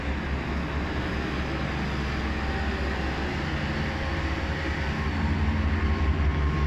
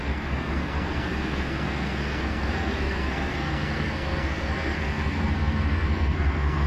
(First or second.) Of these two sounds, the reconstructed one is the second